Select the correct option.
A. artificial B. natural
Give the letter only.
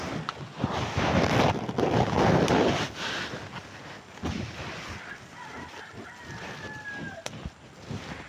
B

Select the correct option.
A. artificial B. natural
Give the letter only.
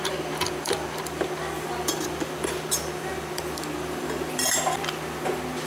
A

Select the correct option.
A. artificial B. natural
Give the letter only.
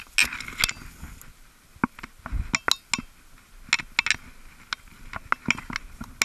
B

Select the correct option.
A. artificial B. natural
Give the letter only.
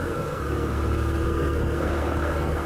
A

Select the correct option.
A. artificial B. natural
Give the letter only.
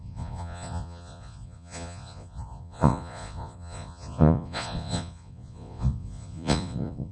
A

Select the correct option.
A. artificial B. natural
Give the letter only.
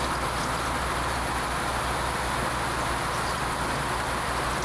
B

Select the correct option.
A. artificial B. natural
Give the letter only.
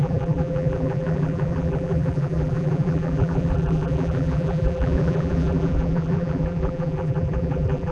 A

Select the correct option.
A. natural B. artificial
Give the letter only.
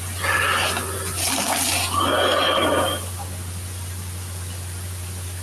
A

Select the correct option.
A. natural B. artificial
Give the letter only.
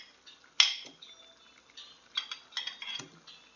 A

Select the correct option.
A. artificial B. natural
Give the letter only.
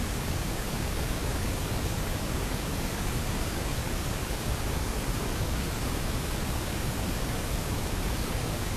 A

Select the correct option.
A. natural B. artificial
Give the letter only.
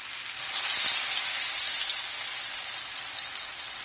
A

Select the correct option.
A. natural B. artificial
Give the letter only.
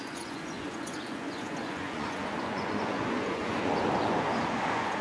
B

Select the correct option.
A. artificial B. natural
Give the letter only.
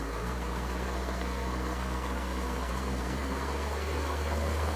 A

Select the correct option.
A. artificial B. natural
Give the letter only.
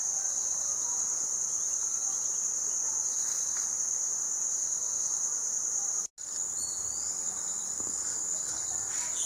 B